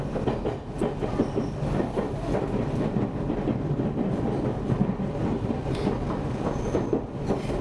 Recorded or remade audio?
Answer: recorded